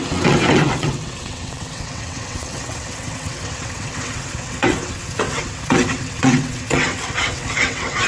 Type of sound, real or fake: fake